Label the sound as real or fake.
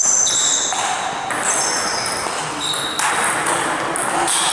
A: real